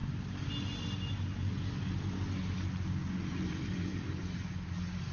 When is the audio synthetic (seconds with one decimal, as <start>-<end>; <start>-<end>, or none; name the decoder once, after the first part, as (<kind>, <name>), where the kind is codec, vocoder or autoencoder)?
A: 3.1-5.1 (vocoder, BigVGAN v2)